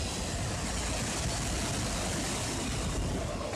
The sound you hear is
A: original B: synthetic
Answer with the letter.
A